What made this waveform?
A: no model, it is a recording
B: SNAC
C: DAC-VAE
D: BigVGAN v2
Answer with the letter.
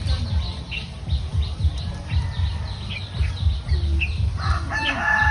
A